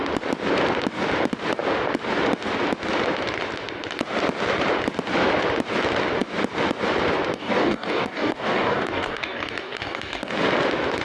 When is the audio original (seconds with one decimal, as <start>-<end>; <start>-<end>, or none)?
0.0-7.3; 10.3-11.0